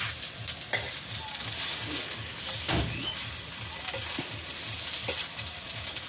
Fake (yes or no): no